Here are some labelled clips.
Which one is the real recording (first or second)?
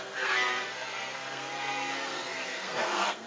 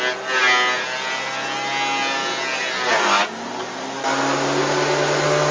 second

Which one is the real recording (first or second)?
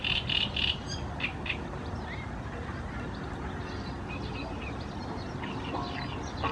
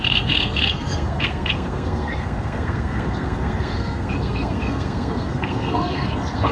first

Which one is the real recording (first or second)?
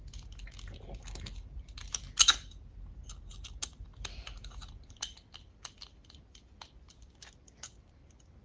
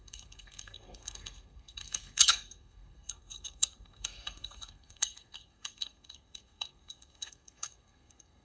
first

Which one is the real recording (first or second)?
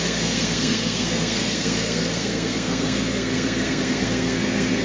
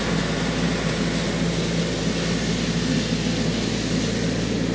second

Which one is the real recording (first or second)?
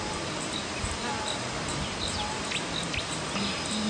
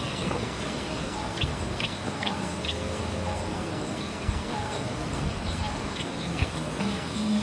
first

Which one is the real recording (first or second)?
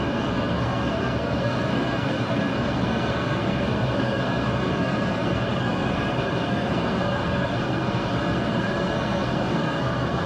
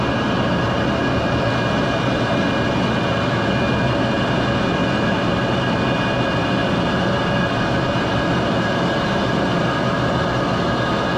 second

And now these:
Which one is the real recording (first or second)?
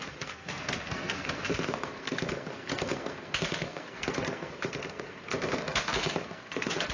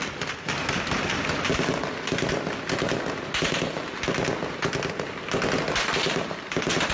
second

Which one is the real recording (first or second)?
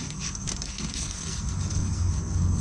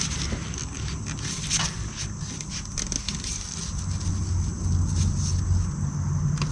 second